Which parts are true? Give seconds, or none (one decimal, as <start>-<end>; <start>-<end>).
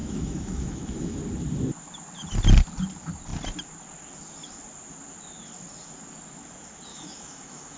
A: 1.2-6.9